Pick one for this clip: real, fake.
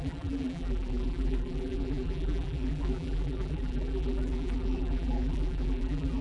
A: fake